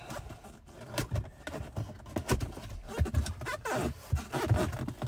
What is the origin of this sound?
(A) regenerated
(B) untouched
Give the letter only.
B